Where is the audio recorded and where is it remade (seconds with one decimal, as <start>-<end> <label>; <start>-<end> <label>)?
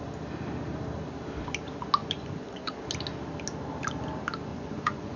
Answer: 0.0-2.0 recorded; 2.0-2.7 remade; 2.7-4.5 recorded; 4.5-5.2 remade